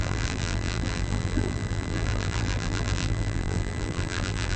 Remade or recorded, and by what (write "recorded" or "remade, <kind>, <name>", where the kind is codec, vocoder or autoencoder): remade, vocoder, BigVGAN v2